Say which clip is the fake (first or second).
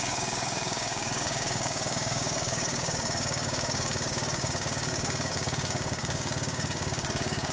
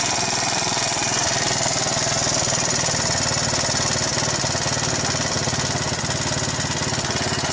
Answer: first